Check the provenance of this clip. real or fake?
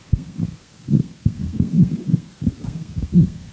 fake